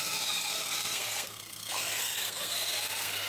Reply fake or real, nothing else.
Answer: fake